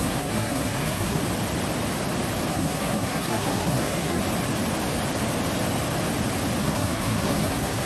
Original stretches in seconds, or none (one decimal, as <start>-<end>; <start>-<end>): 1.2-2.5; 4.2-6.6